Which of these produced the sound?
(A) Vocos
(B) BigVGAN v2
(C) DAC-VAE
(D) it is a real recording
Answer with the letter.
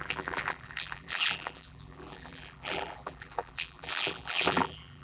B